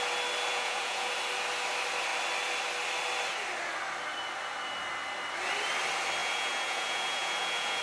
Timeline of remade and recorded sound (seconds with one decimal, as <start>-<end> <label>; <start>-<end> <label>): 0.0-0.5 recorded; 0.5-1.1 remade; 1.1-6.2 recorded; 6.2-7.8 remade